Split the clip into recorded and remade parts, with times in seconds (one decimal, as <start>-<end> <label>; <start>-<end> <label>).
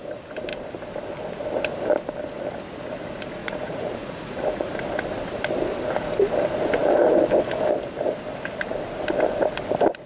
0.0-3.4 recorded; 3.4-4.7 remade; 4.7-10.1 recorded